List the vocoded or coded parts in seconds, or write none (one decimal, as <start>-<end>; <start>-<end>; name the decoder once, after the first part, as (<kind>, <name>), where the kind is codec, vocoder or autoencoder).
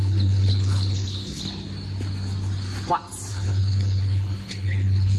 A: 0.0-1.4 (codec, HILCodec); 3.3-5.2